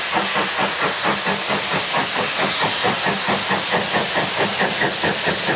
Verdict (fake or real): real